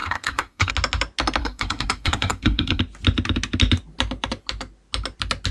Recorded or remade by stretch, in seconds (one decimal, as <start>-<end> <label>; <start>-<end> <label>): 0.0-0.7 remade; 0.7-1.4 recorded; 1.4-2.8 remade; 2.8-5.5 recorded